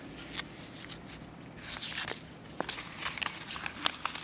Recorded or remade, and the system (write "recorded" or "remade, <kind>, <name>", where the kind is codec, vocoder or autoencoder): recorded